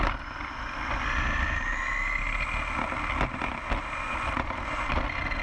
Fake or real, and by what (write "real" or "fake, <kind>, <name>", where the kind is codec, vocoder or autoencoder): real